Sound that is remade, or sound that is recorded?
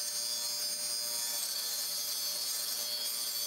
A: recorded